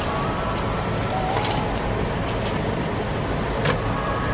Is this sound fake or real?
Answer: real